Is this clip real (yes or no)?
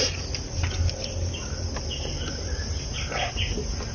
yes